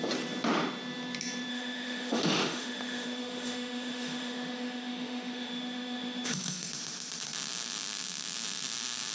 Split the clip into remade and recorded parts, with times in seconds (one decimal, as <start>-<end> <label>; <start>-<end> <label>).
0.0-1.5 recorded; 1.5-6.7 remade; 6.7-9.1 recorded

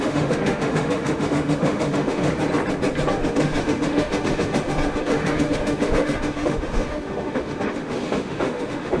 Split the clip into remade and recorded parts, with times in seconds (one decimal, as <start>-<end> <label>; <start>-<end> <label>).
0.0-2.3 remade; 2.3-3.1 recorded; 3.1-9.0 remade

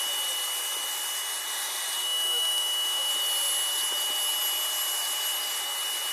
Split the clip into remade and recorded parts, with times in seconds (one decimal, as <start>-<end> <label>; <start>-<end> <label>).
0.0-2.0 recorded; 2.0-3.1 remade; 3.1-6.1 recorded